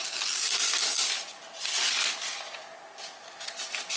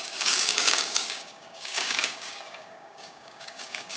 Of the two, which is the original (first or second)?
first